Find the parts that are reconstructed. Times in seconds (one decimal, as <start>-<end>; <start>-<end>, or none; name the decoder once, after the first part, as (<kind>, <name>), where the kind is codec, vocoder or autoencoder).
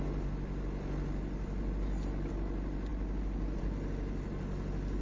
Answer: none